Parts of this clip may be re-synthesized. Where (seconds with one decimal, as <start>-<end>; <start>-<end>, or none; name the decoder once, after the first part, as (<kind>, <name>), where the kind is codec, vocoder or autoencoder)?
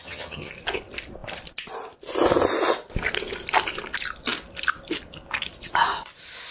0.0-0.5 (vocoder, HiFi-GAN)